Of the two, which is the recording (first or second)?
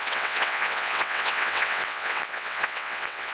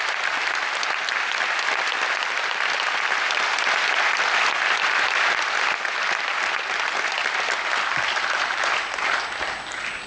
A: second